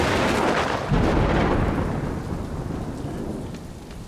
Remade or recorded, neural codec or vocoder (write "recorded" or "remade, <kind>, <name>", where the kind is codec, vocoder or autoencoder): recorded